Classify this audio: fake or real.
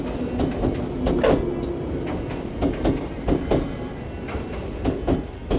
real